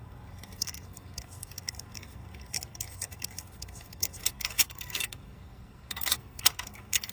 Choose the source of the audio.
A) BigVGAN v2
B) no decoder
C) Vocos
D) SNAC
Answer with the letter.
D